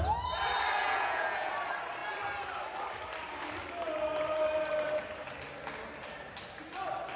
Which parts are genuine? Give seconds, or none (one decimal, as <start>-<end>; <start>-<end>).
0.0-0.8; 1.5-7.2